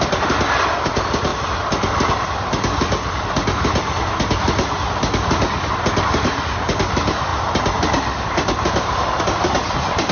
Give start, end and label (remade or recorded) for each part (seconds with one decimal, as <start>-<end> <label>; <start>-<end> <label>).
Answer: 0.0-10.1 recorded